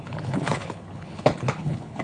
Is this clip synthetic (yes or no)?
yes